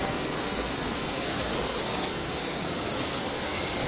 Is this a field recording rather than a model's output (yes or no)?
no